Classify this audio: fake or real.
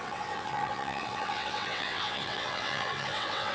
fake